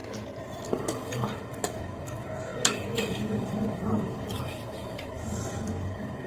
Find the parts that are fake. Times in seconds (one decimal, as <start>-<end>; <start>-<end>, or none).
0.7-6.3